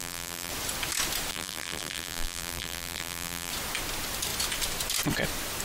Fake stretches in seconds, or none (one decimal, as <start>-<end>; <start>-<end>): 0.0-0.5; 1.3-3.5